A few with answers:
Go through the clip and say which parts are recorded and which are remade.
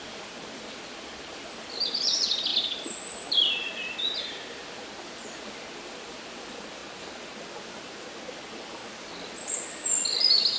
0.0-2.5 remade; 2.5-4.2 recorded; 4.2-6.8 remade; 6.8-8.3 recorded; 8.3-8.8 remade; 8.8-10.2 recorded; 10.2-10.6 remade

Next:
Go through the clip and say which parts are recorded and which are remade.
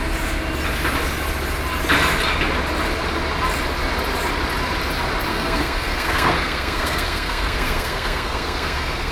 0.0-5.3 recorded; 5.3-9.1 remade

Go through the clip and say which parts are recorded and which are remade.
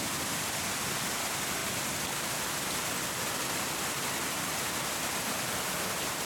0.0-6.2 recorded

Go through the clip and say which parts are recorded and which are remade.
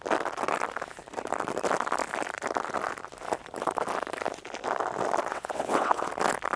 0.0-5.3 recorded; 5.3-6.1 remade; 6.1-6.6 recorded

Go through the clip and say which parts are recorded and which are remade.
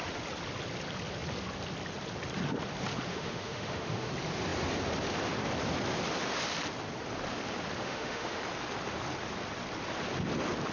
0.0-3.1 recorded; 3.1-4.1 remade; 4.1-7.8 recorded; 7.8-8.4 remade; 8.4-10.7 recorded